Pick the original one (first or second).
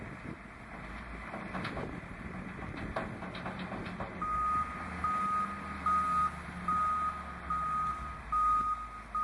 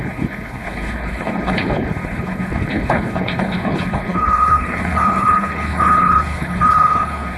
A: first